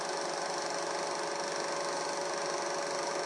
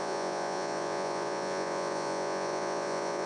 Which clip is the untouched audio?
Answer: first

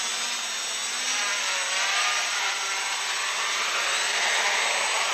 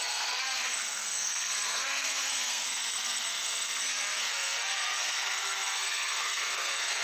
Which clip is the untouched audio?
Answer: first